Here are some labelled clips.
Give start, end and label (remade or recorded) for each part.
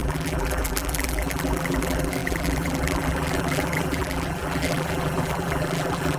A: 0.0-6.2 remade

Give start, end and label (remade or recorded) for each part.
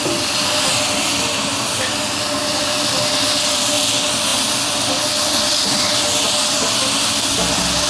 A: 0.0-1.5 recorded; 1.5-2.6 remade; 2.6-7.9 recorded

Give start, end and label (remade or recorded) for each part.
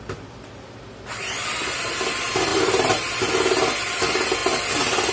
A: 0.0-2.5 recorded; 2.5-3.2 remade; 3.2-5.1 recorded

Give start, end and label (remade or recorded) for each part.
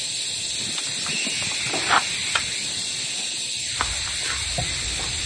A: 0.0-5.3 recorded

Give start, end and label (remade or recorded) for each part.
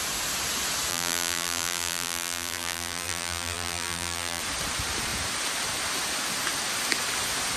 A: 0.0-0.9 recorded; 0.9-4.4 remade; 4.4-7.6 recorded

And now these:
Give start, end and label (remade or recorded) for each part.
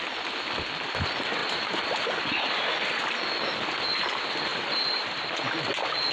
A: 0.0-4.5 recorded; 4.5-5.2 remade; 5.2-6.1 recorded